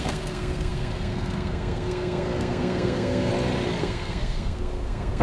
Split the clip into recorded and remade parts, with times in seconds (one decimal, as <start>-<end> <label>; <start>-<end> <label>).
0.0-3.3 remade; 3.3-3.8 recorded; 3.8-5.2 remade